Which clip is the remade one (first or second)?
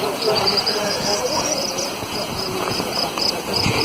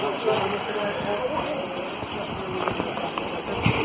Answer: first